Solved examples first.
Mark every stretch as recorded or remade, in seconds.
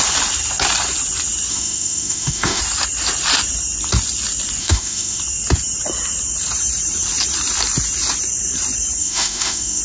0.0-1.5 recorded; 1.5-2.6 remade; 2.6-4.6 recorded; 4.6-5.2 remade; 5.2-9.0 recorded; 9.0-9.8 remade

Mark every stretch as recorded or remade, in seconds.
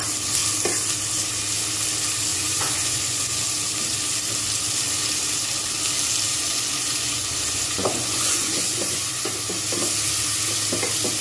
0.0-2.3 recorded; 2.3-3.4 remade; 3.4-6.3 recorded; 6.3-9.3 remade; 9.3-11.2 recorded